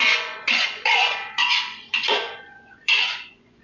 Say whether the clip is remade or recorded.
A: remade